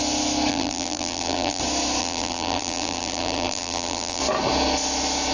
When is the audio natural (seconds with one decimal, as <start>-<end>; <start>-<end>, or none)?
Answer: 0.0-0.5; 1.6-2.0; 4.2-5.3